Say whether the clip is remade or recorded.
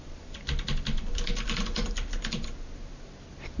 recorded